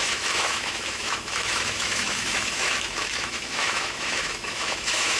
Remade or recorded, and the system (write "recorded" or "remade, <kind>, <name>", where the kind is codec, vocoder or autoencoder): remade, autoencoder, DAC-VAE